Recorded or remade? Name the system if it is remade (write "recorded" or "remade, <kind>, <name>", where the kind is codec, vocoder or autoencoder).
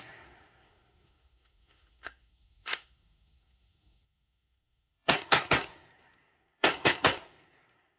remade, codec, SNAC